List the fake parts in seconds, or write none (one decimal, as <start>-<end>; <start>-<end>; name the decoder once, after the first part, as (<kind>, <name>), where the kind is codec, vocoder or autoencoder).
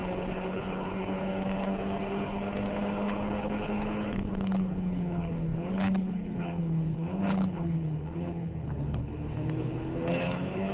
0.0-10.7 (codec, HILCodec)